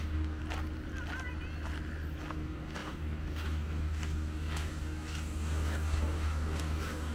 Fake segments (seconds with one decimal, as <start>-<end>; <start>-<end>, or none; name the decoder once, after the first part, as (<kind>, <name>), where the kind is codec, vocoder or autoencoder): 0.0-0.4 (codec, DAC); 2.3-7.1